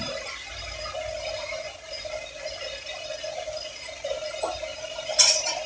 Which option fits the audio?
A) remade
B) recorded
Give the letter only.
B